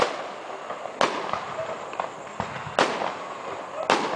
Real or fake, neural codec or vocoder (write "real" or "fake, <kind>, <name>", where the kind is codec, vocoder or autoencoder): real